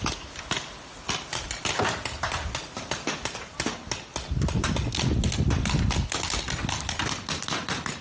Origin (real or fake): real